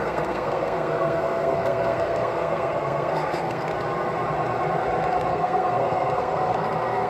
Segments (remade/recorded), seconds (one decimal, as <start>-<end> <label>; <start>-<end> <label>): 0.0-3.7 remade; 3.7-5.3 recorded; 5.3-7.1 remade